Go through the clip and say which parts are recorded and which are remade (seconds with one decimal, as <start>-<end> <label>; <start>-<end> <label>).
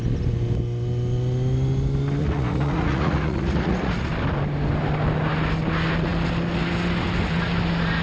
0.0-2.2 recorded; 2.2-4.1 remade; 4.1-8.0 recorded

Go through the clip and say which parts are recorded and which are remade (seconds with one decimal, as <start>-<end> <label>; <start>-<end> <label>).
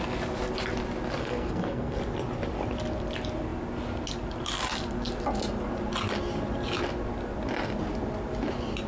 0.0-1.2 recorded; 1.2-2.0 remade; 2.0-8.9 recorded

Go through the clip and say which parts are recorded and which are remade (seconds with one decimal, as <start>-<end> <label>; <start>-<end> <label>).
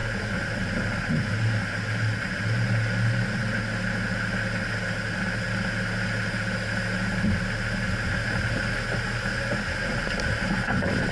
0.0-11.1 recorded